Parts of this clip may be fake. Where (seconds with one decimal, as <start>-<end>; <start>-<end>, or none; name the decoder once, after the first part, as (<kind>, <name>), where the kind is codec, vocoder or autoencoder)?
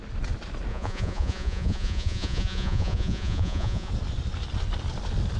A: 0.7-3.9 (vocoder, Vocos)